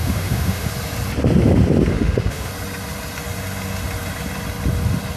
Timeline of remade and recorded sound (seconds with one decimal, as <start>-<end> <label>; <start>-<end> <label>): 0.0-0.7 remade; 0.7-1.9 recorded; 1.9-2.5 remade; 2.5-5.2 recorded